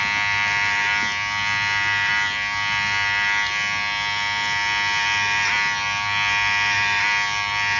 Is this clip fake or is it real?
real